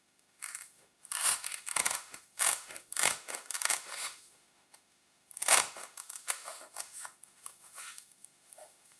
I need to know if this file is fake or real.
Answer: fake